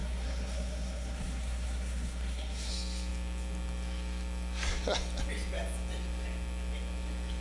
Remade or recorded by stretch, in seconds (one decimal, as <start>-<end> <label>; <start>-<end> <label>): 0.0-2.7 remade; 2.7-7.4 recorded